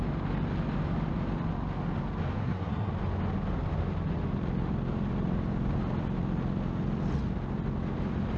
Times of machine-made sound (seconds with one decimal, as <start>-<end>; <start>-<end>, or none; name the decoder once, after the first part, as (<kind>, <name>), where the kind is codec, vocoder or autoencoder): 2.4-2.9 (codec, SNAC)